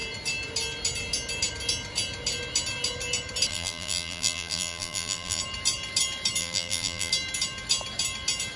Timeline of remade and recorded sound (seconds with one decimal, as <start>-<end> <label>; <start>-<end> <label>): 0.0-3.5 recorded; 3.5-5.4 remade; 5.4-6.4 recorded; 6.4-7.1 remade; 7.1-8.6 recorded

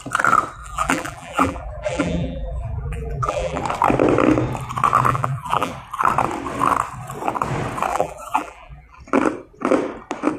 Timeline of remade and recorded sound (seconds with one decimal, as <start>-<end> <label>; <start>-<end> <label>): 0.0-0.6 recorded; 0.6-3.6 remade; 3.6-5.1 recorded; 5.1-5.7 remade; 5.7-7.9 recorded; 7.9-9.0 remade; 9.0-10.4 recorded

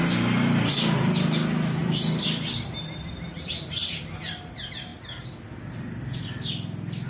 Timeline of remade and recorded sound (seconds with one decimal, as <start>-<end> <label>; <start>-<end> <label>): 0.0-1.8 recorded; 1.8-4.1 remade; 4.1-4.9 recorded; 4.9-5.4 remade; 5.4-7.1 recorded

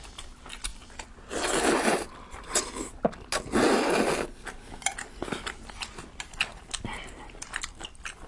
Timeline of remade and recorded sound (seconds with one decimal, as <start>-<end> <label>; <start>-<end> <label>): 0.0-8.3 recorded

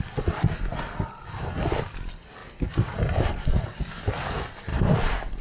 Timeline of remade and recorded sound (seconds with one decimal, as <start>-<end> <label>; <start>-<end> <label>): 0.0-2.4 recorded; 2.4-4.0 remade; 4.0-4.7 recorded; 4.7-5.4 remade

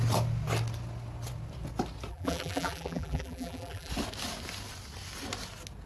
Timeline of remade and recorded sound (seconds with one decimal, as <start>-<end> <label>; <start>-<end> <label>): 0.0-2.1 recorded; 2.1-3.9 remade; 3.9-5.9 recorded

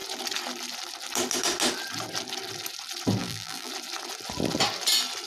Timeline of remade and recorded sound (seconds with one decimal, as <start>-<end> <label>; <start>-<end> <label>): 0.0-3.2 recorded; 3.2-3.7 remade; 3.7-5.3 recorded

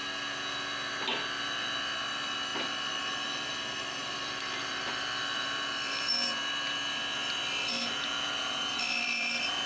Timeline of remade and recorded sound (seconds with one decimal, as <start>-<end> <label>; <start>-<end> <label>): 0.0-2.0 recorded; 2.0-6.3 remade; 6.3-7.7 recorded; 7.7-9.7 remade